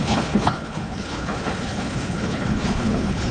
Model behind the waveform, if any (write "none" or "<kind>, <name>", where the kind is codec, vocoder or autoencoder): codec, HILCodec